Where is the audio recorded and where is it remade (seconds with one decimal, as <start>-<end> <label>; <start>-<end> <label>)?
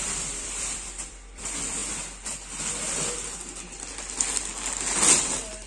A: 0.0-1.8 remade; 1.8-5.2 recorded; 5.2-5.7 remade